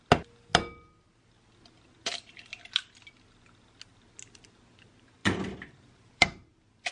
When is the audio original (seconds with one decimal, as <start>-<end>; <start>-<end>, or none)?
0.0-5.2